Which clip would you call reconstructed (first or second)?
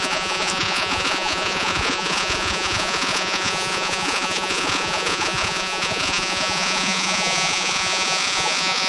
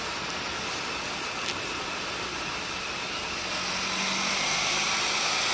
first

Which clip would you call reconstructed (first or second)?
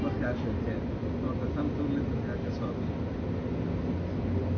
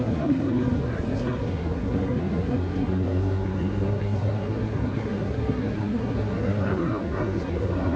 second